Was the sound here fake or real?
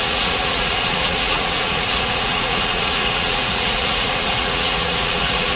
fake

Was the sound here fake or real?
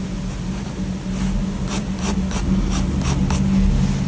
real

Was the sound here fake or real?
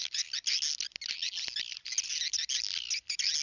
real